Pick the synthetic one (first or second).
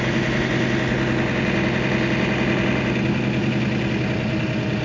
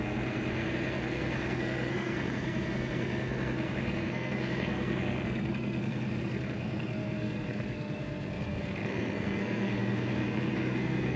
second